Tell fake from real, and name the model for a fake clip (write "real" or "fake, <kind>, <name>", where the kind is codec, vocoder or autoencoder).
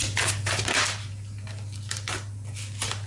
real